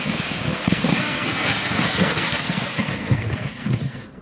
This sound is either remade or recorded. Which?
remade